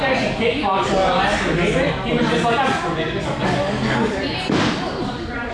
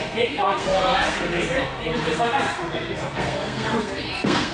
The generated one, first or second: second